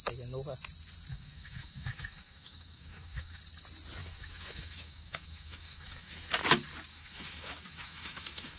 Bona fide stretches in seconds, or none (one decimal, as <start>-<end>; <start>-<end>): 0.0-1.1; 3.4-4.0; 6.3-6.9